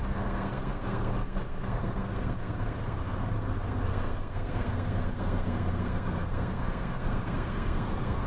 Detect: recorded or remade remade